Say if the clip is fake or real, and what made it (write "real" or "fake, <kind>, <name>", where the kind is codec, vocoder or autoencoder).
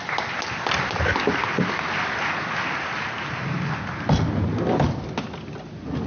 real